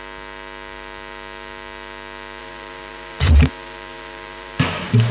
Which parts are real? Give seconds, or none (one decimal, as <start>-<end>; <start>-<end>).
0.0-2.4